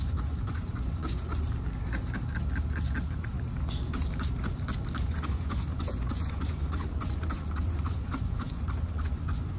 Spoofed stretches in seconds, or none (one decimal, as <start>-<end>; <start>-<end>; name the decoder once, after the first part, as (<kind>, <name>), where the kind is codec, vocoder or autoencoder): 0.0-1.3 (vocoder, Vocos); 5.0-9.6